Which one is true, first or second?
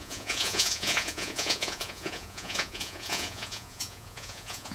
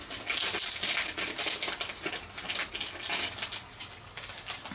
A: second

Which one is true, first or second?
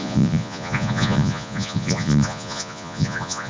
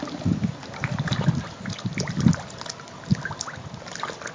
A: second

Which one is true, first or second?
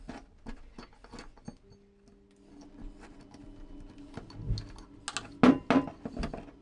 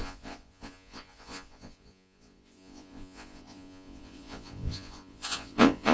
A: first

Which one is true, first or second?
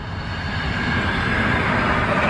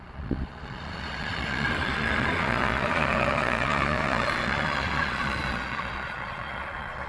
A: first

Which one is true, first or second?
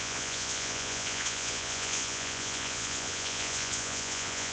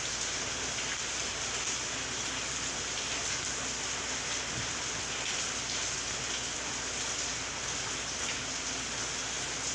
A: second